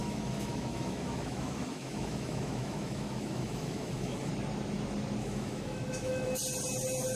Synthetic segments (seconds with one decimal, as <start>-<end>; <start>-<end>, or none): 0.0-4.3; 5.2-6.4